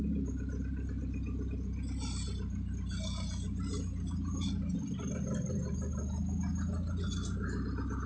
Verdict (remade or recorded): recorded